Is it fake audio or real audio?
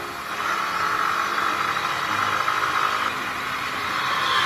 real